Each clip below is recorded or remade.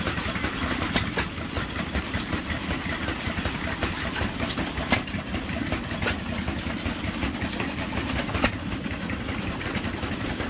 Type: remade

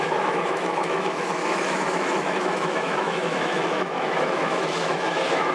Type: remade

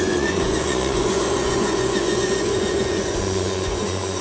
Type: remade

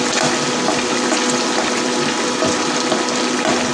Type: recorded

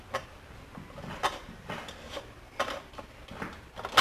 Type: recorded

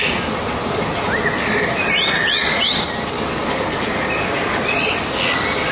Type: recorded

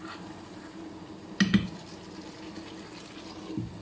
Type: recorded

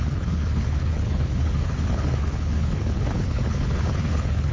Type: remade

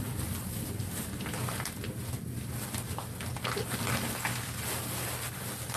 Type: recorded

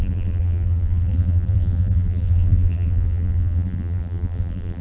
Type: remade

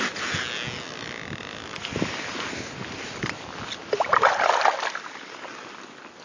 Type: recorded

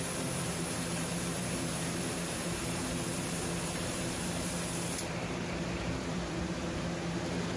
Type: remade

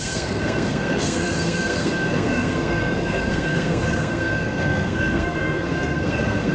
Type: remade